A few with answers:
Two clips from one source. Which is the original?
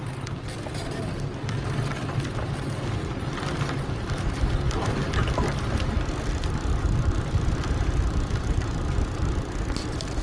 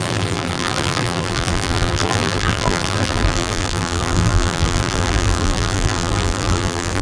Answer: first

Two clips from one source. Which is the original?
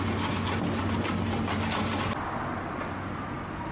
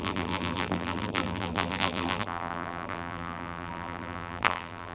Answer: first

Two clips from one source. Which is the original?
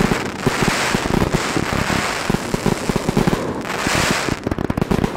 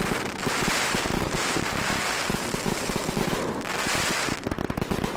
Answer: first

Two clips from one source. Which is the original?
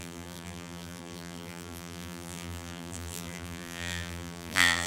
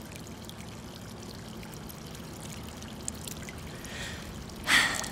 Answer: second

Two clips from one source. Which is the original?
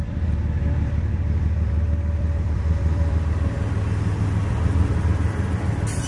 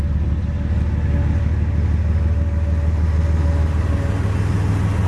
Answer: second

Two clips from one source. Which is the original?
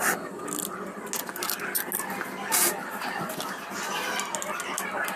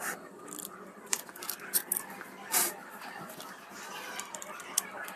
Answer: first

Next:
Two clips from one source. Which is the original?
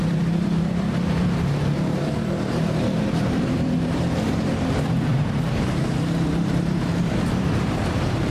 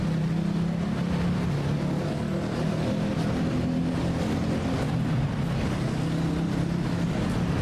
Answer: second